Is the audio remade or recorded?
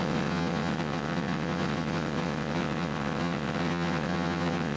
remade